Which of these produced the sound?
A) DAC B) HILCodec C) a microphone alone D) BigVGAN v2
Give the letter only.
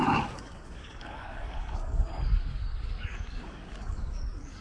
A